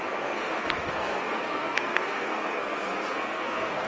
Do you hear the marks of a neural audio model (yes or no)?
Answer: yes